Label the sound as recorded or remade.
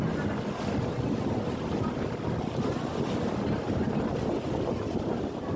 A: recorded